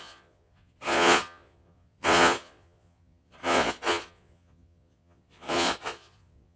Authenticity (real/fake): fake